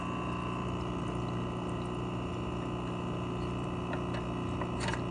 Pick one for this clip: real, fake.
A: real